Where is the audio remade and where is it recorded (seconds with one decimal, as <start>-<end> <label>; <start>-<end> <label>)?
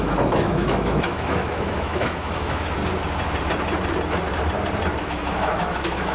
0.0-2.8 remade; 2.8-5.0 recorded; 5.0-6.1 remade